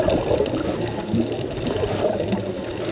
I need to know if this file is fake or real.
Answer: real